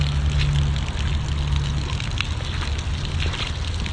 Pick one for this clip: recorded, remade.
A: recorded